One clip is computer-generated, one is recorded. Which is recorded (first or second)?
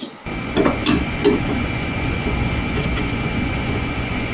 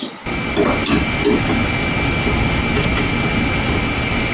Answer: second